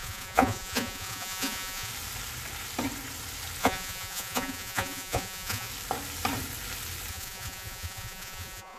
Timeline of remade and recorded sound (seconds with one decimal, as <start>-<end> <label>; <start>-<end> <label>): 0.0-1.9 remade; 1.9-3.6 recorded; 3.6-5.7 remade; 5.7-7.1 recorded; 7.1-8.8 remade